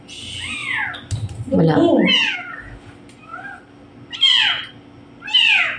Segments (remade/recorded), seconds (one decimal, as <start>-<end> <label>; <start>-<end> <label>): 0.0-5.8 recorded